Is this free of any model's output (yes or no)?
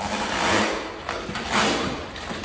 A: yes